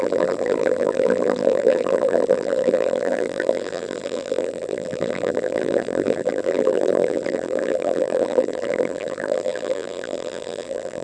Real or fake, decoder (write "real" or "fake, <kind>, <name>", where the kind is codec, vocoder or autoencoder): fake, vocoder, BigVGAN v2